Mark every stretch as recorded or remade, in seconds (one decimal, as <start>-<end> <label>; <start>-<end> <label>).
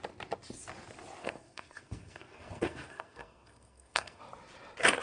0.0-1.2 recorded; 1.2-4.2 remade; 4.2-5.0 recorded